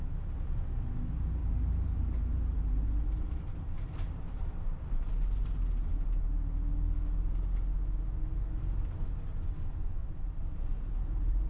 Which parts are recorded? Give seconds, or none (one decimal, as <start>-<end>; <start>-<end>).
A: 0.0-1.4; 5.1-10.0